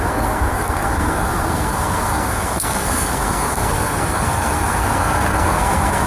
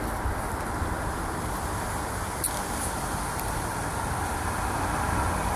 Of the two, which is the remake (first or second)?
first